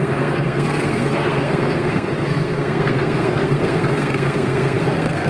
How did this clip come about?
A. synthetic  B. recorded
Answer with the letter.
A